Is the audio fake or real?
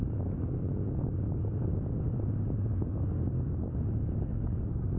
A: real